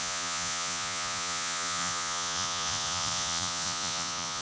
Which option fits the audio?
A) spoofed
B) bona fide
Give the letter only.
A